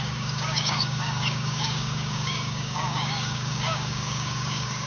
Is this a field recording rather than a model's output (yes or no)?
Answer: no